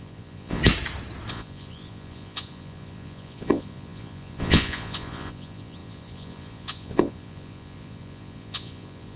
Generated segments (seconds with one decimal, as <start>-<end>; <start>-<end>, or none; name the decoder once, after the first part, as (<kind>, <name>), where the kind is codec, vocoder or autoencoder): 0.0-0.6 (vocoder, Vocos); 1.3-9.2